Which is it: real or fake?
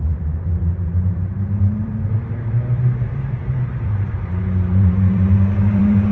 fake